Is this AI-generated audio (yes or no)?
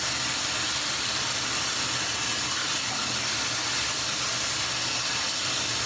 no